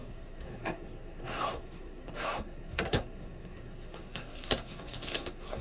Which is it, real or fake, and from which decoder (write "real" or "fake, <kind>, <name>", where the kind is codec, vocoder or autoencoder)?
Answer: fake, codec, SNAC